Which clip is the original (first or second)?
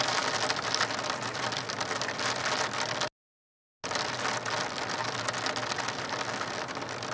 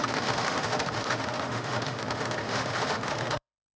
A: first